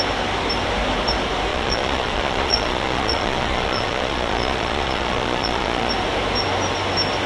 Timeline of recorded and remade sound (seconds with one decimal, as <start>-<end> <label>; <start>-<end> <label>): 0.0-1.5 recorded; 1.5-5.9 remade; 5.9-7.3 recorded